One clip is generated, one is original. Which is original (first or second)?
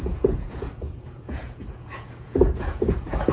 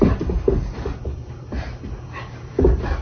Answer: second